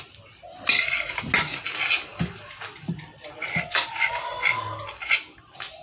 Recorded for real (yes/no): yes